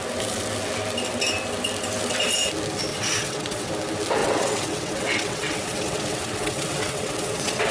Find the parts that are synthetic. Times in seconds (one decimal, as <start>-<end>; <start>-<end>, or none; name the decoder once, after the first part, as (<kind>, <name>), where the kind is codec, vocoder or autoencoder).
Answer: 2.9-3.7 (vocoder, WaveNeXt); 4.2-7.7